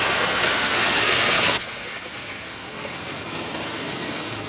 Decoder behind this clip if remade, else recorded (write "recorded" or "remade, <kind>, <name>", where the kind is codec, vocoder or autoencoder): remade, codec, SNAC